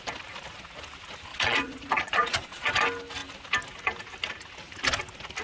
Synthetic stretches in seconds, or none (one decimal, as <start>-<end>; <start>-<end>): 1.3-2.7